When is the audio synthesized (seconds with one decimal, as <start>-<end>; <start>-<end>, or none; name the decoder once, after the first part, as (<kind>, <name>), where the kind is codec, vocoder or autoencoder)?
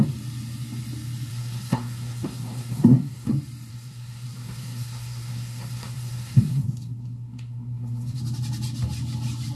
1.3-3.3 (codec, SNAC); 3.7-8.2